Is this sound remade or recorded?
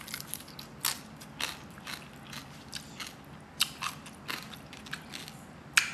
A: recorded